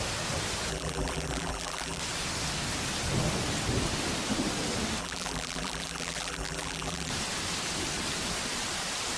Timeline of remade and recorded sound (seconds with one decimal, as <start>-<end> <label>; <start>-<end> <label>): 0.0-0.7 recorded; 0.7-2.0 remade; 2.0-5.0 recorded; 5.0-7.1 remade; 7.1-9.2 recorded